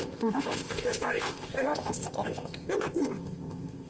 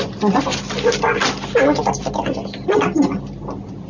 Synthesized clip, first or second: first